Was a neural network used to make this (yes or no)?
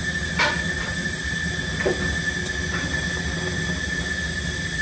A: no